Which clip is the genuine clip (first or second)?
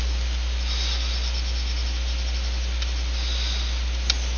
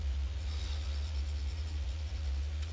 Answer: first